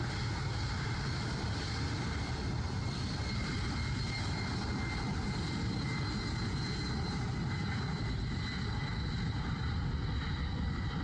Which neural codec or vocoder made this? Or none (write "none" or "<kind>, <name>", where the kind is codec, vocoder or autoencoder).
none